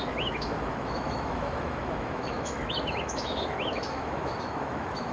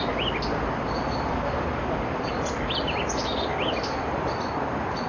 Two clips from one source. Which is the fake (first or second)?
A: first